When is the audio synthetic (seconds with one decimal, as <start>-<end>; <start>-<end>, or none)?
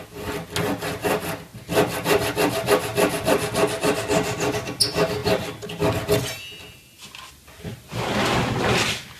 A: none